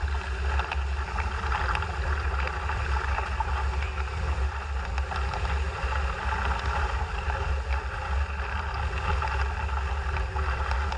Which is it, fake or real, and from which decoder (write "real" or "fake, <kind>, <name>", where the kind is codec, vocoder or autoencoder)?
real